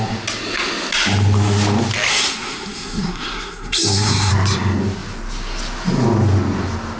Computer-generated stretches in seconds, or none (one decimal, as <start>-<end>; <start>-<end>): 2.1-4.3